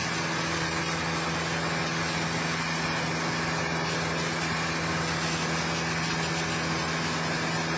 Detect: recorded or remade recorded